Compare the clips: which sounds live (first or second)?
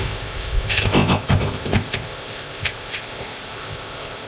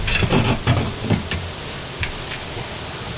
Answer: second